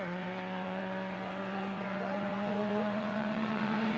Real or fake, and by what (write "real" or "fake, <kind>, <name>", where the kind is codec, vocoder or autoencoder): fake, vocoder, WaveNeXt